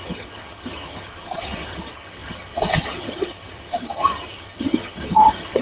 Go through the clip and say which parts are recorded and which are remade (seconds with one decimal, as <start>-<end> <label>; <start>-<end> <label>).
0.0-5.6 remade